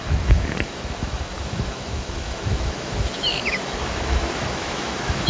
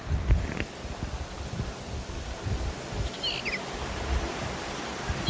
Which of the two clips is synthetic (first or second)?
first